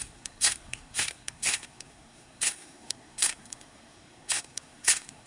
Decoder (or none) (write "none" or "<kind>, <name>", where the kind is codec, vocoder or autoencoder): codec, SNAC